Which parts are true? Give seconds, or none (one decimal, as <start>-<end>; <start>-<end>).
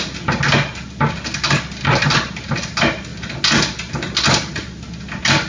0.0-5.5